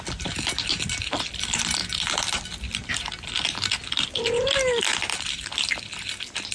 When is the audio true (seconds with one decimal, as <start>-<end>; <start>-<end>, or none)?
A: 0.0-6.5